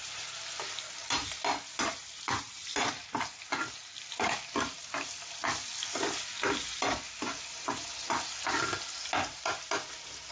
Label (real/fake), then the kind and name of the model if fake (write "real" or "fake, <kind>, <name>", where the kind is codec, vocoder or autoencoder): real